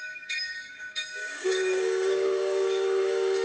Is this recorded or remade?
remade